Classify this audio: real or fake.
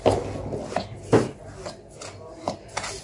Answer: real